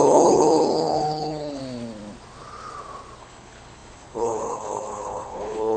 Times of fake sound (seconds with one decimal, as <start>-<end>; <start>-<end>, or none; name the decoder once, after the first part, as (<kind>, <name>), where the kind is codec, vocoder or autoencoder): 0.0-1.6 (codec, HILCodec); 3.2-5.8